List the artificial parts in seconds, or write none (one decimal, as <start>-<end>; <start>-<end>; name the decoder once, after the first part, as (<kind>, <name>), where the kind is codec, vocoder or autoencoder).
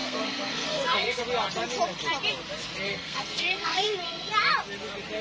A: 0.0-1.2 (codec, SNAC); 2.9-4.3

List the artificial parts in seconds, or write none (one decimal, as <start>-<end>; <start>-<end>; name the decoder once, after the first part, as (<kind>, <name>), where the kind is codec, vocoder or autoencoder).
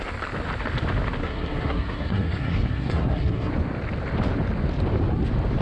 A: 1.2-3.5 (codec, SNAC)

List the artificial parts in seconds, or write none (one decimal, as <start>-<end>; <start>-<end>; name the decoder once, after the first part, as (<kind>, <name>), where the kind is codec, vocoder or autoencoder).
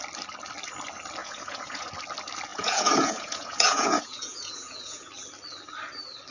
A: 1.2-1.9 (vocoder, Vocos); 2.5-5.1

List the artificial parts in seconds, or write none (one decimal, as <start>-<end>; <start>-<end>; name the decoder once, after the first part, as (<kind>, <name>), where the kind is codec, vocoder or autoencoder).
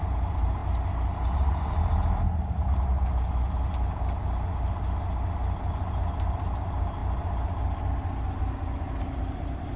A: 0.0-0.6 (vocoder, BigVGAN v2); 5.7-7.0; 8.4-9.8